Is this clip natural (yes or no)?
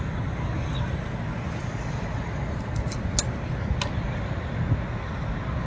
yes